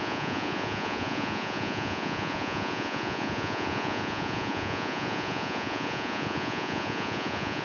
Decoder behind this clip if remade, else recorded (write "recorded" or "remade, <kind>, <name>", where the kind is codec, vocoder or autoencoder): remade, vocoder, Vocos